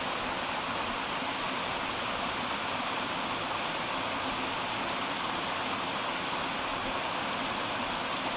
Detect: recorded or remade recorded